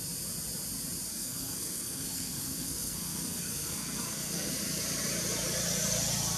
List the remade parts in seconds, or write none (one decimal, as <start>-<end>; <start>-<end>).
1.1-4.5